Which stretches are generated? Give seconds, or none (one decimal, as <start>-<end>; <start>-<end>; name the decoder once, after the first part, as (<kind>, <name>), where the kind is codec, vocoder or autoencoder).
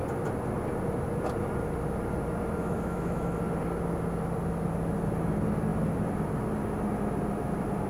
2.6-3.4 (autoencoder, DAC-VAE)